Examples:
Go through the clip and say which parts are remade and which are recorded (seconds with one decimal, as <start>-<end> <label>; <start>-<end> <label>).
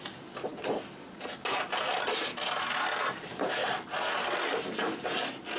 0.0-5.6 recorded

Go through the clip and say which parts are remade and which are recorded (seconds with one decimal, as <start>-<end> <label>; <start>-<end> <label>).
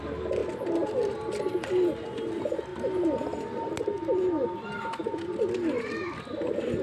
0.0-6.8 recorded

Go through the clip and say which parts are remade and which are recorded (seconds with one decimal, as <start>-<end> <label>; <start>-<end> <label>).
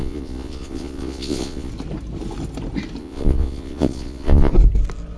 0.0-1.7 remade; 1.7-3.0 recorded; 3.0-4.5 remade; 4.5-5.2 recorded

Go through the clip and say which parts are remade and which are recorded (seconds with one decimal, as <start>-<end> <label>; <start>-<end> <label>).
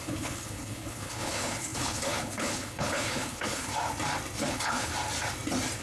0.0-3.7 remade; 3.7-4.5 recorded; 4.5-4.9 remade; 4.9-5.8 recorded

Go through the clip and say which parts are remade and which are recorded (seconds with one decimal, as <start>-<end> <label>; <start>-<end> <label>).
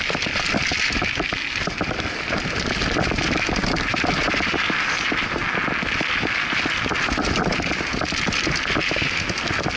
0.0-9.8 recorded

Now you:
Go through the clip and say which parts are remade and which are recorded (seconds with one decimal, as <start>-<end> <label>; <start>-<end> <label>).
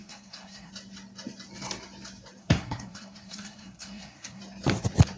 0.0-0.7 remade; 0.7-2.4 recorded; 2.4-4.4 remade; 4.4-5.2 recorded